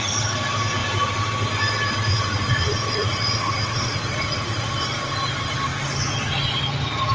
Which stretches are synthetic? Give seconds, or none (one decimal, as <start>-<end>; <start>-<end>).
2.1-4.7